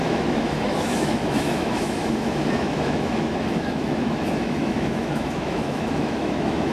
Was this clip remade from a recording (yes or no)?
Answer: yes